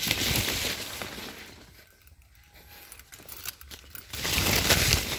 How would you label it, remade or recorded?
recorded